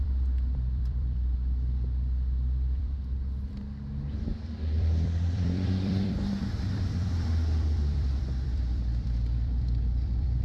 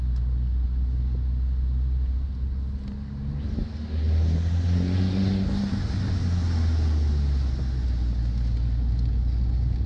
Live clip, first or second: second